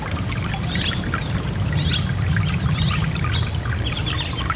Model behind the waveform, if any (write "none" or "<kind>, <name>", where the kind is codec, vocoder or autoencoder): none